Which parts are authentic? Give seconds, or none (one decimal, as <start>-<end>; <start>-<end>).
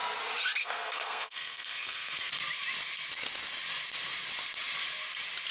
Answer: 0.0-0.6; 2.3-5.5